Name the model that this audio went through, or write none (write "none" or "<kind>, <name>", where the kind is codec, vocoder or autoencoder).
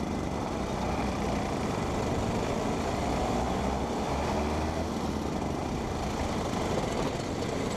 none